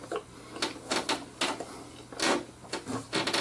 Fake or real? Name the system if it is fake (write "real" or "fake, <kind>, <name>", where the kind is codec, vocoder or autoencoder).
real